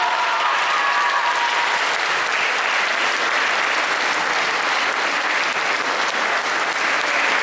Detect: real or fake real